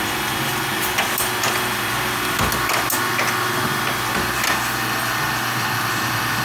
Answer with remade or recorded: recorded